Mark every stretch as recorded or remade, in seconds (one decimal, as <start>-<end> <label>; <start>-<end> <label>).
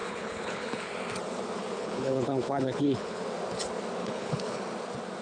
0.0-0.9 remade; 0.9-1.6 recorded; 1.6-3.2 remade; 3.2-4.0 recorded; 4.0-4.6 remade; 4.6-5.2 recorded